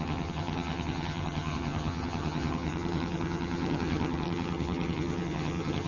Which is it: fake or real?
fake